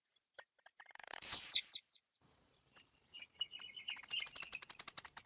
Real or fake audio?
fake